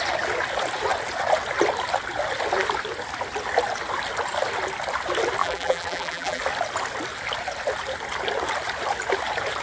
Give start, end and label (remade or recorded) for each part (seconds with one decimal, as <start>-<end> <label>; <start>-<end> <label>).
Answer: 0.0-5.4 recorded; 5.4-6.4 remade; 6.4-9.6 recorded